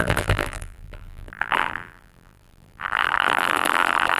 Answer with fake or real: fake